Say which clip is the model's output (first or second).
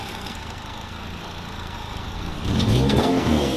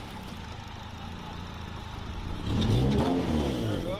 first